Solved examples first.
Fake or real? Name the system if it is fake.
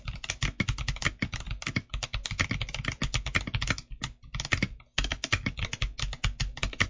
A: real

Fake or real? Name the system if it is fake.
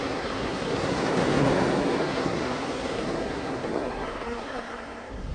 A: fake, codec, SNAC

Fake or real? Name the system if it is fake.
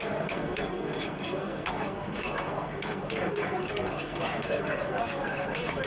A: fake, codec, SNAC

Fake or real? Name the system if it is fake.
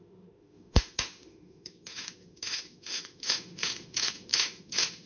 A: fake, autoencoder, DAC-VAE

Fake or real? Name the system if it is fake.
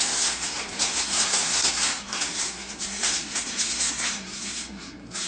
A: fake, codec, SNAC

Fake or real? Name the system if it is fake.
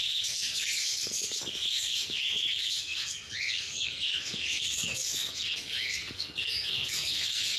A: fake, codec, SNAC